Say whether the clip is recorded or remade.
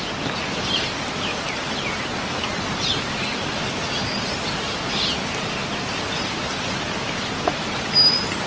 recorded